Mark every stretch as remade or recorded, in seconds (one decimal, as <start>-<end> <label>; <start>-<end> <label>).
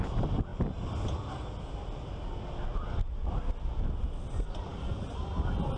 0.0-5.8 recorded